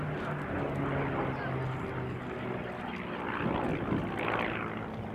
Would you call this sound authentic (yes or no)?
yes